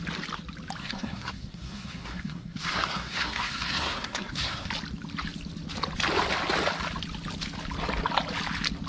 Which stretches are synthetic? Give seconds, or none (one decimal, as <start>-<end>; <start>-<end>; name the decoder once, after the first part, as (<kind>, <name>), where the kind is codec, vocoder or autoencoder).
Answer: 0.8-4.7 (codec, SNAC)